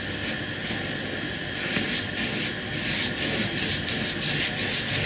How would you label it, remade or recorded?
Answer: recorded